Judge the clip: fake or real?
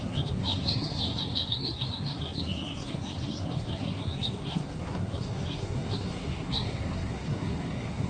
fake